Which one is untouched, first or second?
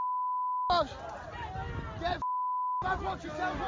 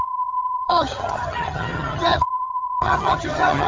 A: first